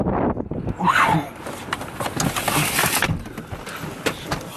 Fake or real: real